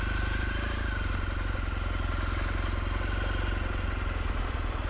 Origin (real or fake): real